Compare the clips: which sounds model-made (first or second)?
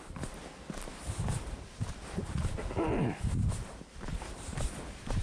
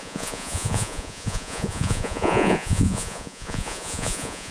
second